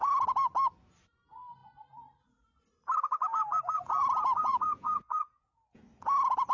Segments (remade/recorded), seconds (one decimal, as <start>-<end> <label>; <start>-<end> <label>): 0.0-4.4 recorded; 4.4-5.8 remade; 5.8-6.5 recorded